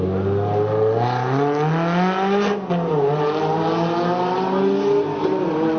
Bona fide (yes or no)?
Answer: yes